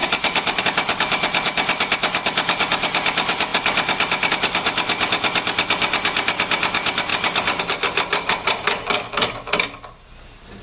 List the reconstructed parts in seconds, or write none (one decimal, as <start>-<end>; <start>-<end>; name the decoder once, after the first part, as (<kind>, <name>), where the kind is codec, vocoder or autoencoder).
0.0-0.6 (vocoder, BigVGAN v2); 7.1-7.6